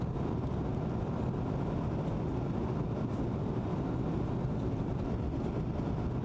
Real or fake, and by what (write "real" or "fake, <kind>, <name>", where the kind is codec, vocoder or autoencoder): real